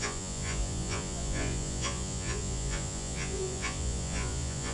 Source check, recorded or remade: remade